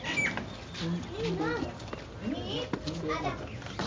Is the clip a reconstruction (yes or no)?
no